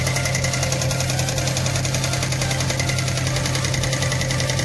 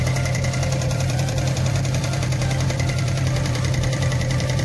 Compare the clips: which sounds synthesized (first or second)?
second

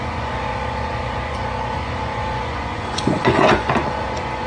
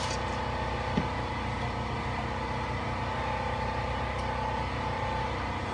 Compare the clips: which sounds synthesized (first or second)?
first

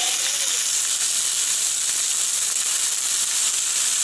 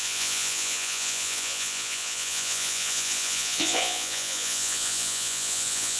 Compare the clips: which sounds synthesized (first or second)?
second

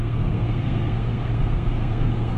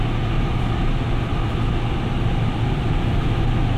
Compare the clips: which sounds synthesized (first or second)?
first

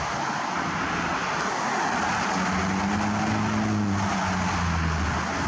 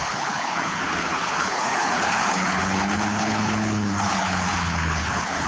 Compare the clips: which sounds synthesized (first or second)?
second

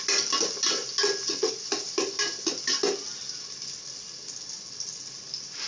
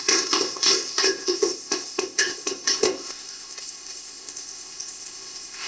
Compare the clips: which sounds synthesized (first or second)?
second